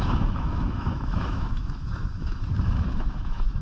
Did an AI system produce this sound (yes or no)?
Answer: yes